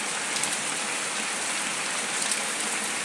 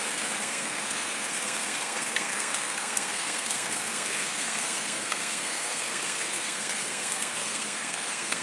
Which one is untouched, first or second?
first